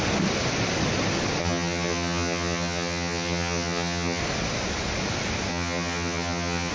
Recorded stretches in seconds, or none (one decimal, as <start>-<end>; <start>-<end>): 0.0-1.4; 4.2-5.5

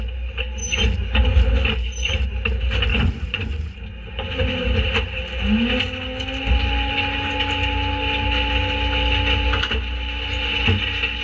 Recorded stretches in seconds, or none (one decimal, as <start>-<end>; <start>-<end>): 0.0-2.9; 3.8-11.2

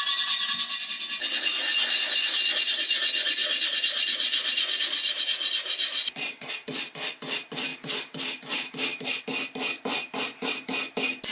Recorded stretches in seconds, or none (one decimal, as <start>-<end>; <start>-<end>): 0.0-3.4; 7.1-7.7; 9.2-11.3

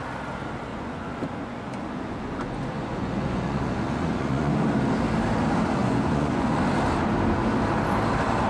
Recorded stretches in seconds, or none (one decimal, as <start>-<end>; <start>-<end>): 0.0-0.7; 4.5-5.8; 6.6-8.5